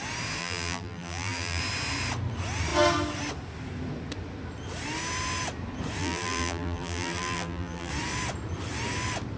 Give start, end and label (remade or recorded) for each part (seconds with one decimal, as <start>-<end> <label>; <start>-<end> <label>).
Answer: 0.0-0.4 recorded; 0.4-1.6 remade; 1.6-6.0 recorded; 6.0-7.9 remade; 7.9-9.4 recorded